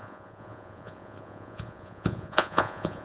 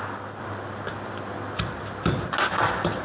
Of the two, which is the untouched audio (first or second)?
second